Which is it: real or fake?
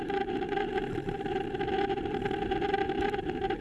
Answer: fake